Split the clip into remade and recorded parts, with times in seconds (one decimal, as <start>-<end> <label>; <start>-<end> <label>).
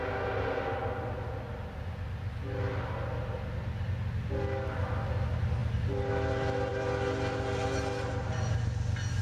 0.0-9.2 recorded